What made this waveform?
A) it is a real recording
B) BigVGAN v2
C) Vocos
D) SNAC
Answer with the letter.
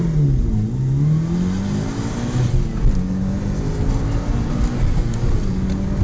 A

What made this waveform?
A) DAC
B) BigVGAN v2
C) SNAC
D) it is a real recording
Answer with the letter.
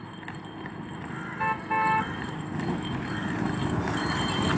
D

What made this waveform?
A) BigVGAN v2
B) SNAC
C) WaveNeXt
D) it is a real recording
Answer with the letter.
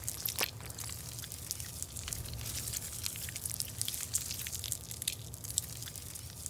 D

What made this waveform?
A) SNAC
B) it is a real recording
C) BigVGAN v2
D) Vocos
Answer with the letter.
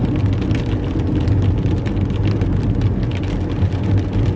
B